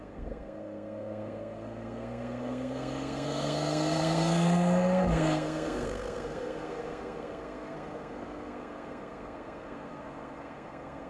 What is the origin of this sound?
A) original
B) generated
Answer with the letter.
B